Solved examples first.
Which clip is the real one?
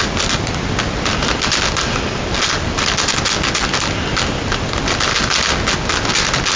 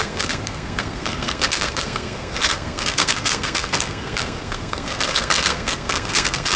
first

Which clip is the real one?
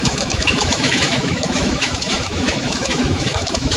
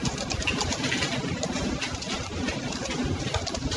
second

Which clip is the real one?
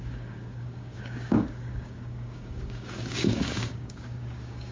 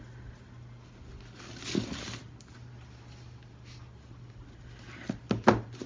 second